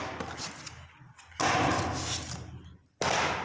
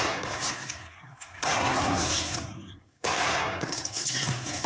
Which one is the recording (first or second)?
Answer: first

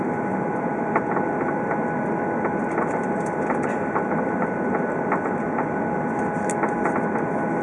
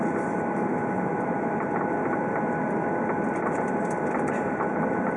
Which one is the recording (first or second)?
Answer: first